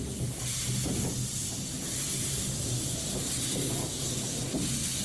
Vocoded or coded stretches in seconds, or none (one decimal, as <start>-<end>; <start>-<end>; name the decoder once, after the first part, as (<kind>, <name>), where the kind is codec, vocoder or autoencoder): 3.8-4.4 (codec, DAC)